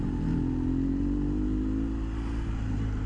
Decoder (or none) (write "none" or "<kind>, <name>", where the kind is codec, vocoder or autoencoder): none